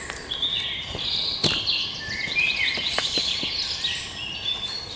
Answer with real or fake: real